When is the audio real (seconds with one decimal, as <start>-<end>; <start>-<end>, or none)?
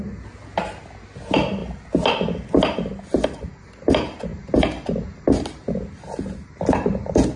0.0-7.4